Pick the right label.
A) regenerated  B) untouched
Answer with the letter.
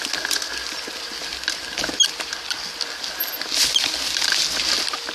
B